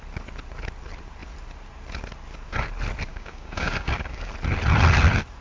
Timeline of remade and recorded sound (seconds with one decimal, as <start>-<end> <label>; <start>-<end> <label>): 0.0-3.1 recorded; 3.1-4.3 remade; 4.3-5.4 recorded